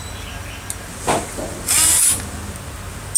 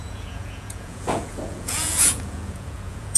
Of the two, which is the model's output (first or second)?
second